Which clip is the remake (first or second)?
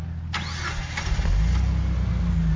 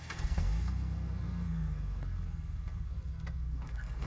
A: second